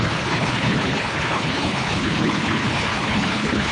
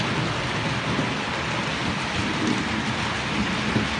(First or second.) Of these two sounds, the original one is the second